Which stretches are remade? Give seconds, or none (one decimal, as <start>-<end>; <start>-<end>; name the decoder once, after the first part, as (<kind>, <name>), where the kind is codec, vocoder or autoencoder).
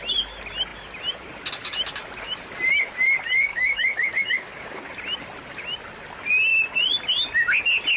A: 3.5-4.8 (codec, DAC)